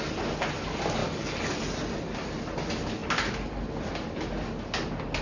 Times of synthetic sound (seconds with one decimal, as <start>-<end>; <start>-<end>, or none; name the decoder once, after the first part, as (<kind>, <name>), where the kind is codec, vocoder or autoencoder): none